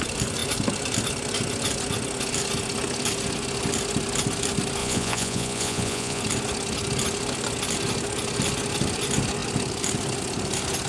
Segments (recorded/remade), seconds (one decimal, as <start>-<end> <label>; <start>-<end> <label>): 0.0-4.8 recorded; 4.8-6.2 remade; 6.2-10.9 recorded